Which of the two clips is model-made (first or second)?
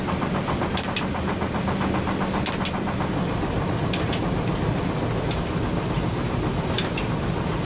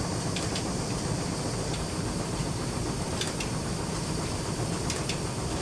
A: second